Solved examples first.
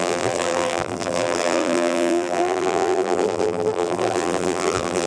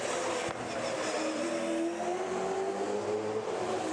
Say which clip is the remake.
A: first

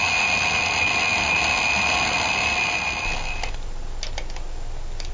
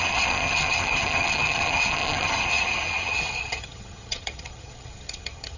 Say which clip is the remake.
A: second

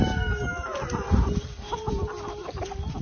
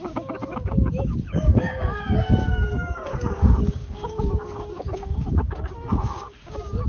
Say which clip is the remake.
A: second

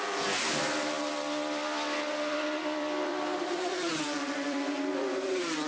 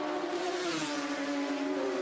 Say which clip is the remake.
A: first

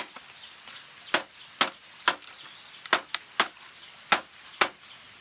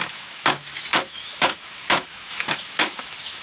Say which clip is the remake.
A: second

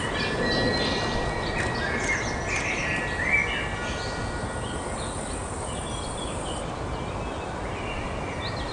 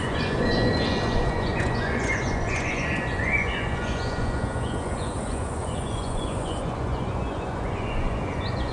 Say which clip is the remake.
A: second